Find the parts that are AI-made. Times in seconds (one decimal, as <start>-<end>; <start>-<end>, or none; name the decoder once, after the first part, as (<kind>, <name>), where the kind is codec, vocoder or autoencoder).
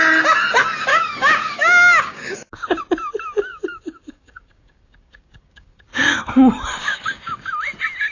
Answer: 0.9-2.8 (codec, DAC); 3.5-6.3; 6.8-7.5